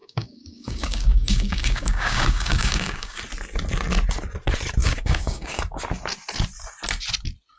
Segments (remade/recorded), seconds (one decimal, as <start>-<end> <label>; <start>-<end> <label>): 0.0-3.2 remade; 3.2-4.8 recorded; 4.8-5.6 remade; 5.6-7.6 recorded